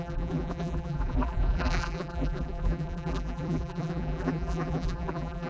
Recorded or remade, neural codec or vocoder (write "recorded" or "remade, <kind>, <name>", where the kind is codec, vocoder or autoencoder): remade, vocoder, BigVGAN v2